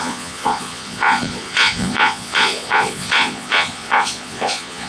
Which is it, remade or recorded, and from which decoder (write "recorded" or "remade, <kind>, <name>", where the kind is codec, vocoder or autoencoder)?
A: remade, vocoder, Vocos